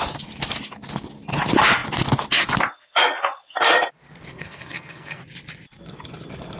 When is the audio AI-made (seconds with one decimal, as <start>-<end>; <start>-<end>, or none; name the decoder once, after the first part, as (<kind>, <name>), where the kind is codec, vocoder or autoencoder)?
4.3-5.2 (codec, SNAC)